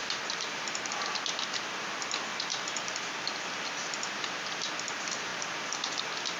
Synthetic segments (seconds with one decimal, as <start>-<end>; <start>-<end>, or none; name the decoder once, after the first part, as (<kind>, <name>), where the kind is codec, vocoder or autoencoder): 0.0-1.1 (vocoder, BigVGAN v2); 2.3-4.7